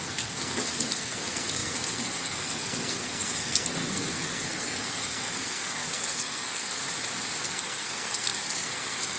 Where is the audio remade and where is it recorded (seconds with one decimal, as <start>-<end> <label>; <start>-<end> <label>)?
0.0-6.8 remade; 6.8-7.4 recorded; 7.4-9.2 remade